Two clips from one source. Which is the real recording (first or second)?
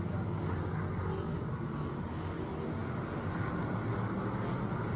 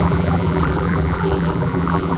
first